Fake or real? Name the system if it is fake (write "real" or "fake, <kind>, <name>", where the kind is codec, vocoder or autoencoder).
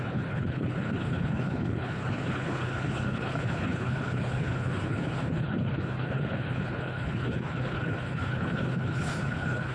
fake, codec, HILCodec